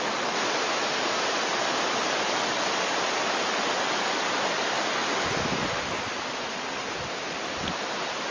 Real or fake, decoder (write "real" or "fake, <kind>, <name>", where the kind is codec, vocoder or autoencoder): real